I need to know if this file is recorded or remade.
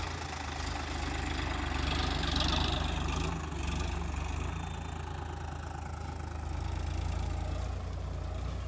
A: recorded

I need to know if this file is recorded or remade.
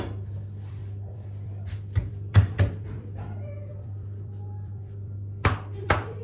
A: remade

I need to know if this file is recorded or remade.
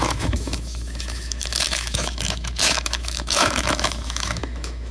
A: remade